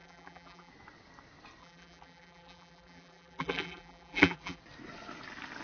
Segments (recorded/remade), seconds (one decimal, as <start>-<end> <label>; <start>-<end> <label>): 0.0-0.7 remade; 0.7-1.6 recorded; 1.6-4.6 remade; 4.6-5.6 recorded